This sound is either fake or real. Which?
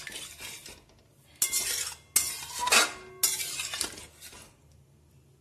real